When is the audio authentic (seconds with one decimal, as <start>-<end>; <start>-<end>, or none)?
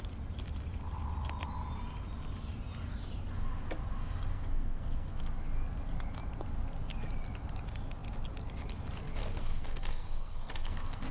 0.0-4.3; 5.2-9.2